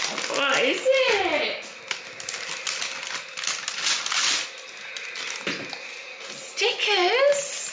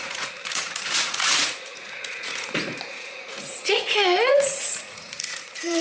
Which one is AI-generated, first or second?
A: second